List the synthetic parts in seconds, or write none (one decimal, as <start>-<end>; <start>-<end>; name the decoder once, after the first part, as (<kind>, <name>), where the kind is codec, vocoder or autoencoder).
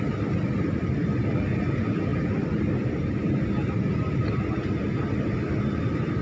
none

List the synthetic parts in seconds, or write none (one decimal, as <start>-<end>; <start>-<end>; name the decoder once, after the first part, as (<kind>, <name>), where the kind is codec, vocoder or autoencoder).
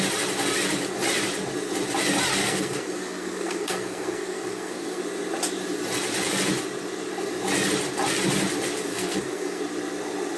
2.4-5.0 (codec, SNAC); 8.9-9.6